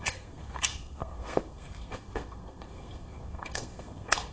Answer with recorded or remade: remade